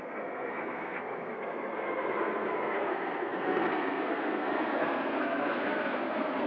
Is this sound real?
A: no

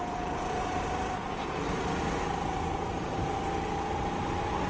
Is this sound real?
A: yes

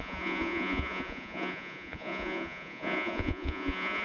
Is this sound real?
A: no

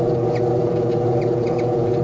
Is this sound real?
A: no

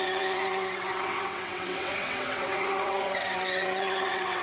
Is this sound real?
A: no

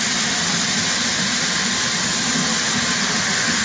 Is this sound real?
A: yes